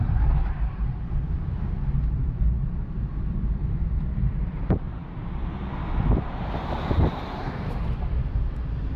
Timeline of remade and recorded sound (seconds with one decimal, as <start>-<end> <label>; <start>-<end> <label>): 0.0-5.0 remade; 5.0-6.2 recorded; 6.2-9.0 remade